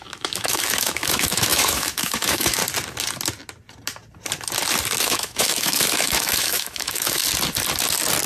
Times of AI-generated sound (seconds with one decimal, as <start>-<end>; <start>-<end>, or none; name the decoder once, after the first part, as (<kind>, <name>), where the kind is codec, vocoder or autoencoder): 0.0-2.6 (autoencoder, DAC-VAE); 5.0-7.2